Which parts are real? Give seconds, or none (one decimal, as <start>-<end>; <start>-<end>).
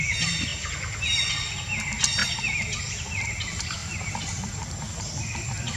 0.0-2.2; 2.8-3.8